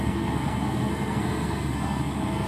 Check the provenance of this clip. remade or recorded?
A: remade